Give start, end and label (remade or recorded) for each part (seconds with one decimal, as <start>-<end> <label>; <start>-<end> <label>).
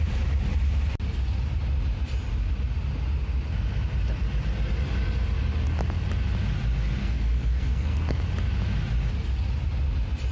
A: 0.0-7.0 recorded; 7.0-8.2 remade; 8.2-10.3 recorded